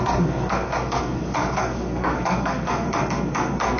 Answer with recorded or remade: remade